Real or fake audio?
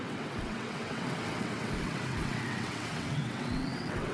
fake